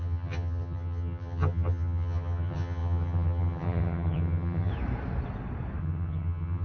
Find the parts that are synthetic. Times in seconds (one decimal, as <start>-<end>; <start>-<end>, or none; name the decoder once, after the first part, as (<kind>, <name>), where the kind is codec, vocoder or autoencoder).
0.0-4.7 (vocoder, HiFi-GAN); 5.8-6.6